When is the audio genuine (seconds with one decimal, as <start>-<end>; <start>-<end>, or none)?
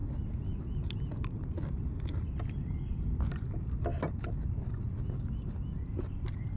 0.0-6.6